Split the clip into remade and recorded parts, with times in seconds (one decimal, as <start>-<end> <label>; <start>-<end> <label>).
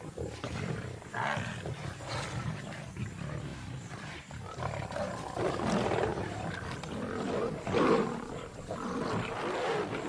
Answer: 0.0-3.5 recorded; 3.5-5.0 remade; 5.0-6.1 recorded; 6.1-9.4 remade; 9.4-10.1 recorded